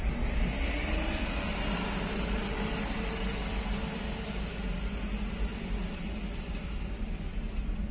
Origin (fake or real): real